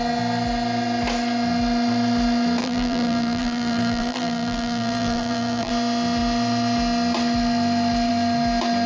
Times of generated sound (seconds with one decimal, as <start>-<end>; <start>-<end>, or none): 2.6-5.7

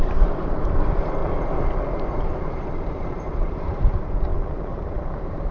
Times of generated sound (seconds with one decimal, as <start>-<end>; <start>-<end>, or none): 0.0-1.2; 1.8-5.5

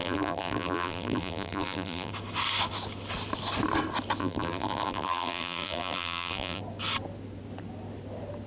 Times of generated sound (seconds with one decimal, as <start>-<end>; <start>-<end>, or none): 0.0-2.1; 4.2-6.6

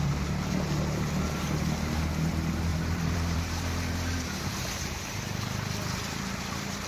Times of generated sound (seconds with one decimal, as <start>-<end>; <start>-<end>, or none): 2.7-4.9

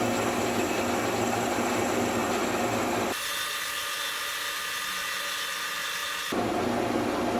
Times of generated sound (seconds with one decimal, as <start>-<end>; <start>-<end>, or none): none

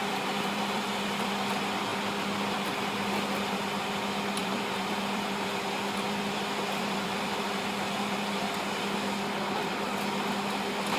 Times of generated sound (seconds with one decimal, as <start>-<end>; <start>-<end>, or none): 0.0-0.9; 4.4-8.4

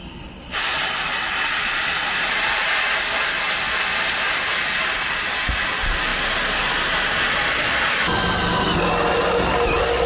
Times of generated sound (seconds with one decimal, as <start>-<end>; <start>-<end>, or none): none